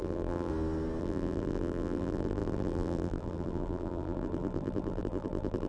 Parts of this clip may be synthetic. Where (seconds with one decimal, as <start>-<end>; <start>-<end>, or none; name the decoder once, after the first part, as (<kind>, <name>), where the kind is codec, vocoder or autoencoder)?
0.0-0.5 (vocoder, BigVGAN v2); 1.0-5.7

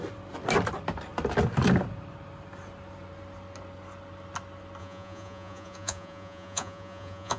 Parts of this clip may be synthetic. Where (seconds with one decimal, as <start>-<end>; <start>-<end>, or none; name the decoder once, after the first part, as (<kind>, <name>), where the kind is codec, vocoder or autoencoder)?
4.8-7.4 (vocoder, Vocos)

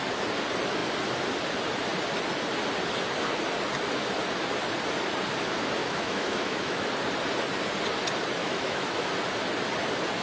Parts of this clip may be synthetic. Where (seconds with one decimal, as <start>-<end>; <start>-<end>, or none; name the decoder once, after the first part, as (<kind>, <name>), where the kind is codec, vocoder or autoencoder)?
5.8-6.9 (autoencoder, DAC-VAE); 8.4-9.0

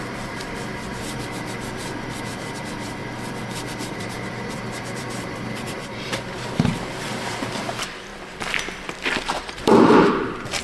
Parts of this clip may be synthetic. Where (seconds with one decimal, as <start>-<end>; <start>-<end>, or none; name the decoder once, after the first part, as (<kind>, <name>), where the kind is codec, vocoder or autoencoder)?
0.0-10.6 (vocoder, BigVGAN v2)

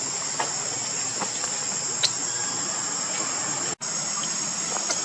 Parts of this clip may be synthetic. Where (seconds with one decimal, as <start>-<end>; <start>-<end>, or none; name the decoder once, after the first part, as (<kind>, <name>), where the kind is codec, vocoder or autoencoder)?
none

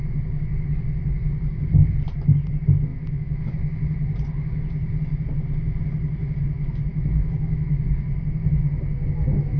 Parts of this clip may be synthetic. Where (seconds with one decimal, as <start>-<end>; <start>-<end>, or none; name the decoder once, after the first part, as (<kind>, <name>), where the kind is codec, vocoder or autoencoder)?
2.9-3.4 (autoencoder, DAC-VAE); 6.9-8.1

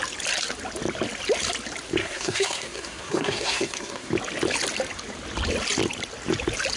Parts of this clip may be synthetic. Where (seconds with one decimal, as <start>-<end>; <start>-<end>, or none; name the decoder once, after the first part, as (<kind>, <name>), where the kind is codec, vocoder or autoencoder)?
2.0-4.1 (codec, SNAC)